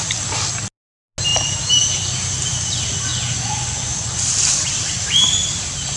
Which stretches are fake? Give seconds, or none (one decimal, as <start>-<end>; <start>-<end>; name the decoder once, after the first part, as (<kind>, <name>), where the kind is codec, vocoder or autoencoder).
3.1-4.3 (vocoder, Vocos)